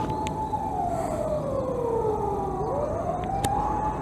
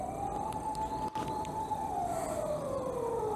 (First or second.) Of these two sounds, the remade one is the second